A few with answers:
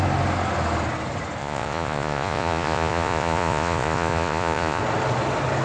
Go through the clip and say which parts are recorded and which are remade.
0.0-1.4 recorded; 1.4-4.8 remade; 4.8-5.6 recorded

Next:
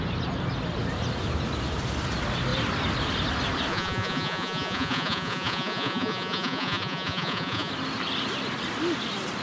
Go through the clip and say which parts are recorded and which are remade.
0.0-3.7 recorded; 3.7-7.7 remade; 7.7-9.4 recorded

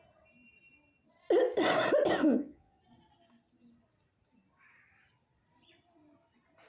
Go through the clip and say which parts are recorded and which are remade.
0.0-2.2 recorded; 2.2-2.8 remade; 2.8-6.7 recorded

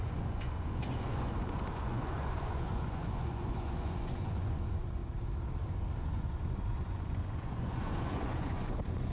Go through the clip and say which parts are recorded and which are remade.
0.0-5.0 remade; 5.0-6.0 recorded; 6.0-9.1 remade

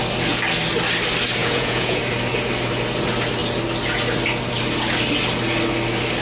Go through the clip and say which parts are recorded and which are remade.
0.0-1.4 recorded; 1.4-2.0 remade; 2.0-6.2 recorded

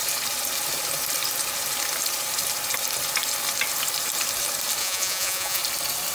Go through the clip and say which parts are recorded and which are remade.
0.0-4.8 recorded; 4.8-5.6 remade; 5.6-6.1 recorded

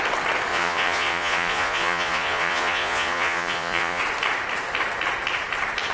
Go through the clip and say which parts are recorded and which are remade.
0.0-0.5 recorded; 0.5-4.0 remade; 4.0-5.9 recorded